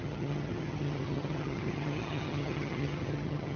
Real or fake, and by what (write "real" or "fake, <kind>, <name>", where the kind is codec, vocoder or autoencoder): fake, vocoder, HiFi-GAN